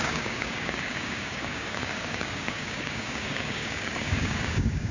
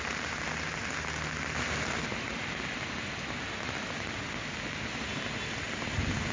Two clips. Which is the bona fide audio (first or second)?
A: second